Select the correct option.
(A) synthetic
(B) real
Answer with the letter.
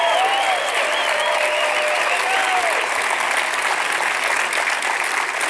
B